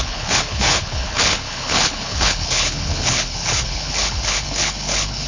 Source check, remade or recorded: remade